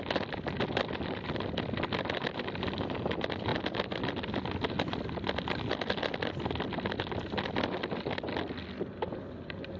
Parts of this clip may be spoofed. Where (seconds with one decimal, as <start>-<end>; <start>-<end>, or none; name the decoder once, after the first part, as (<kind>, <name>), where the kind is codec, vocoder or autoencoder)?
none